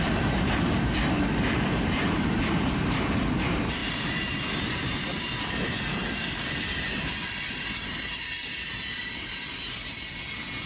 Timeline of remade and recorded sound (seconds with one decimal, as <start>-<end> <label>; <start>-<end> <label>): 0.0-10.7 recorded